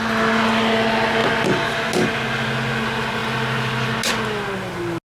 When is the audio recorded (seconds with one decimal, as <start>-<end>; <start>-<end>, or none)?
0.0-5.1